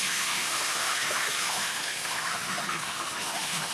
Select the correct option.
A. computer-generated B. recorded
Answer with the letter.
A